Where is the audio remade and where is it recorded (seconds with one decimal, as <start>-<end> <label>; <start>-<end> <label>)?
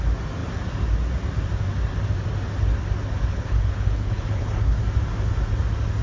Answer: 0.0-3.3 recorded; 3.3-4.8 remade; 4.8-6.0 recorded